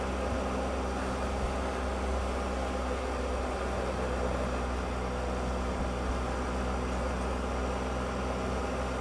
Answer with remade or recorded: recorded